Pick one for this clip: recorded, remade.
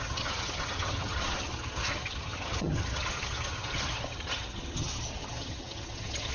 remade